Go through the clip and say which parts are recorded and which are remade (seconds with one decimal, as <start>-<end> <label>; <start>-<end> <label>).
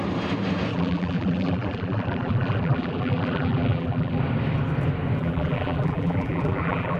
0.0-0.7 recorded; 0.7-4.2 remade; 4.2-5.2 recorded; 5.2-7.0 remade